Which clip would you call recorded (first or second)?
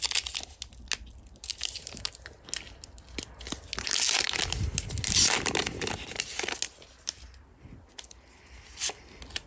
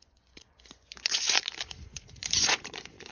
first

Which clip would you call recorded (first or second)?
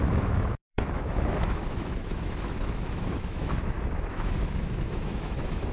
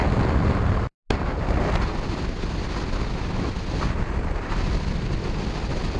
second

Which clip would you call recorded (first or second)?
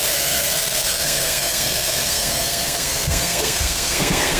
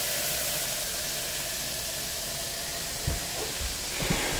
second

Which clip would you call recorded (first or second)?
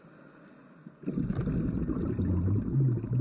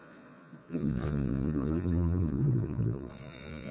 first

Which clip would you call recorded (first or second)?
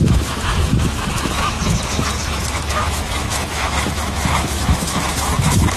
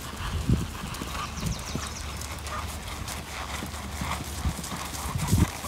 second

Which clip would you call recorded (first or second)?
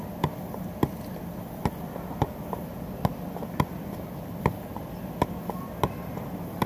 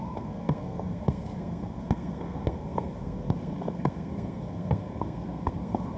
first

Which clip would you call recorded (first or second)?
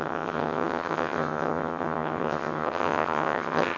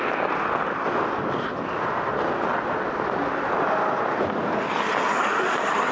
second